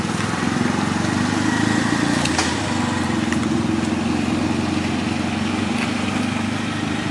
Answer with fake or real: real